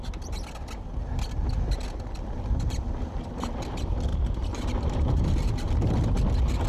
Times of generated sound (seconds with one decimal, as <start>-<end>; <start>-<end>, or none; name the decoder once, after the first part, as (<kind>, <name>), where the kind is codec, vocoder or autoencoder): 4.1-5.7 (vocoder, BigVGAN v2)

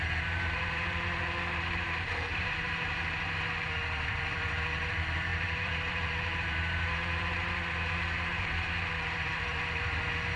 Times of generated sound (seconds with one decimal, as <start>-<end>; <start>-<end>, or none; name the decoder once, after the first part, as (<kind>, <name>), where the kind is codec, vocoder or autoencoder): 0.0-10.4 (vocoder, BigVGAN v2)

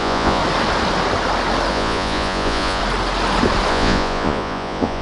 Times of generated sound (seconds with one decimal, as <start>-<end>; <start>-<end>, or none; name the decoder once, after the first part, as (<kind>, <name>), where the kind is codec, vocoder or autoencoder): 0.0-0.4 (vocoder, Vocos); 1.7-2.8; 3.7-5.0

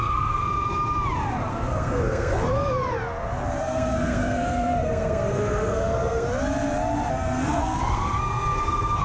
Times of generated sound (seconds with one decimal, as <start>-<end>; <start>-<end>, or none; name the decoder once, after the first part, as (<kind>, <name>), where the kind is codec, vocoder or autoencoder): 0.0-0.4 (codec, SNAC); 1.5-2.5; 3.6-6.3; 7.1-9.0